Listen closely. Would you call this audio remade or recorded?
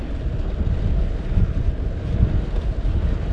recorded